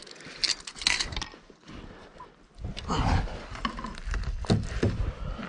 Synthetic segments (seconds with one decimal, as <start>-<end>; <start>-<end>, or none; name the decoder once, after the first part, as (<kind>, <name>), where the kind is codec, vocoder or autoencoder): none